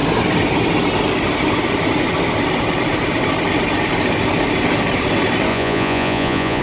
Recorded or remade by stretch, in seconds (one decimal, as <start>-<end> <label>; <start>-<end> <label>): 0.0-5.5 recorded; 5.5-6.6 remade